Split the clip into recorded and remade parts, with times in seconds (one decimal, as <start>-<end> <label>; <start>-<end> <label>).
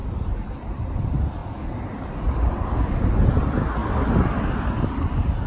0.0-5.5 recorded